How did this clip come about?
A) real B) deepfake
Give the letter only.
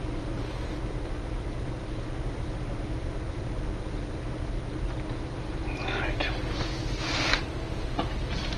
A